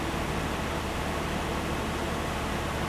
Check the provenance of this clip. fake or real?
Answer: real